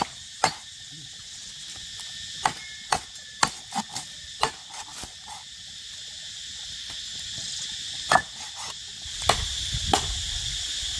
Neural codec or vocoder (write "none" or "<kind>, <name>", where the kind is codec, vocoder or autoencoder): none